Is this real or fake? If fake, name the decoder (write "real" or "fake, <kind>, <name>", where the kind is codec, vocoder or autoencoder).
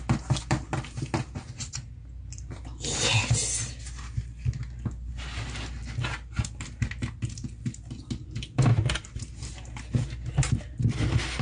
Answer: real